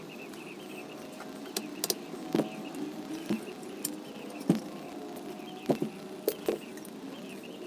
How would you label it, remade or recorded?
recorded